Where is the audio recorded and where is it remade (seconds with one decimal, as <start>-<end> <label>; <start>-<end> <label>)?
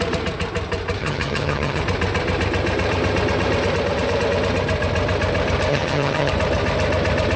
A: 0.0-1.0 recorded; 1.0-1.8 remade; 1.8-5.7 recorded; 5.7-6.3 remade; 6.3-7.4 recorded